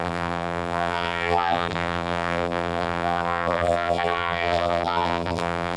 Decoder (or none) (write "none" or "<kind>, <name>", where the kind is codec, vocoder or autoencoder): vocoder, BigVGAN v2